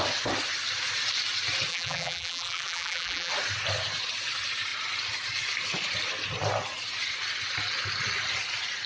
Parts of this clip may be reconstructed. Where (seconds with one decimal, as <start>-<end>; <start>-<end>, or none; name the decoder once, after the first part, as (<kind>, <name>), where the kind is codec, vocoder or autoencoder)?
1.7-3.3 (vocoder, BigVGAN v2)